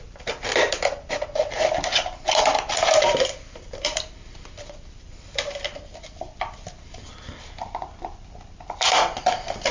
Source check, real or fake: fake